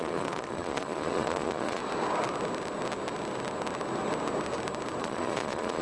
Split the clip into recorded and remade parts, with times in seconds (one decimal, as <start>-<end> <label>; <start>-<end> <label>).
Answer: 0.0-1.8 remade; 1.8-5.0 recorded; 5.0-5.8 remade